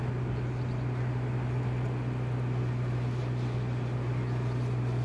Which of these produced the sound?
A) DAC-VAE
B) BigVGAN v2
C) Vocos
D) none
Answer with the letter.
D